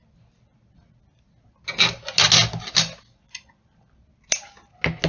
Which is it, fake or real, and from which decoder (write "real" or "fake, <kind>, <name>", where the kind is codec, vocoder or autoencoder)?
real